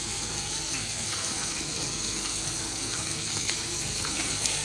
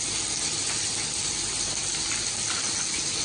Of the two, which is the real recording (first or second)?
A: second